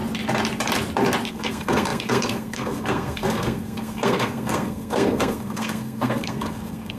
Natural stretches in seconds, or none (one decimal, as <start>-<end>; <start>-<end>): 0.0-1.3